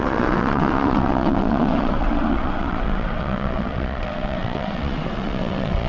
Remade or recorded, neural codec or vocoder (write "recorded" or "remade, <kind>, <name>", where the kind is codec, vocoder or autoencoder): remade, vocoder, WaveNeXt